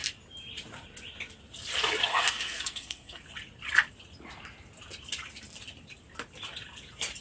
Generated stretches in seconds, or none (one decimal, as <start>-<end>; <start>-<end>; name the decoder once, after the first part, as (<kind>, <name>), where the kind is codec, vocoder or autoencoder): 2.1-3.2 (codec, SNAC)